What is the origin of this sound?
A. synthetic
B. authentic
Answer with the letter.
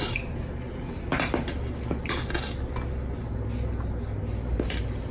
B